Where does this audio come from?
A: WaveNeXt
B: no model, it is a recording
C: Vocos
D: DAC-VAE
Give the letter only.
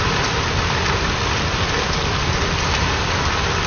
B